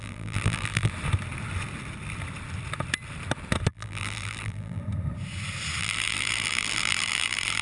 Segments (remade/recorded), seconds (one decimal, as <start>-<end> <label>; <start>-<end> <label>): 0.0-0.9 remade; 0.9-3.7 recorded; 3.7-4.8 remade; 4.8-5.8 recorded; 5.8-7.6 remade